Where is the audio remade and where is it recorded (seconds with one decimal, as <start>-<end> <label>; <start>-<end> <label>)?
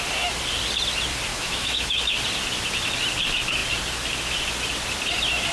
0.0-1.3 recorded; 1.3-2.1 remade; 2.1-5.5 recorded